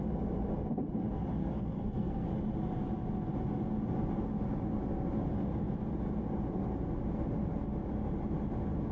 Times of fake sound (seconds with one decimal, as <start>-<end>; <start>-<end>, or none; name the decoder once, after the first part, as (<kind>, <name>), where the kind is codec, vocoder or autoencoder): 1.4-2.3 (codec, SNAC)